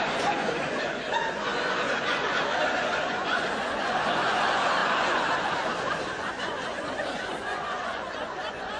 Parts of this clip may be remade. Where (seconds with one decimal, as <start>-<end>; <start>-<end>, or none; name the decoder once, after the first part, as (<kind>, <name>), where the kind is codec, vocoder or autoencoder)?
0.0-8.8 (vocoder, Vocos)